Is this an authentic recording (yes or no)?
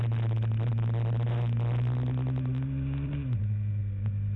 yes